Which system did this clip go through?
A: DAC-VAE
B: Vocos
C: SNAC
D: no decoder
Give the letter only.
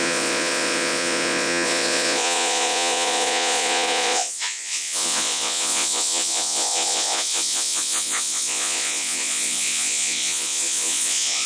B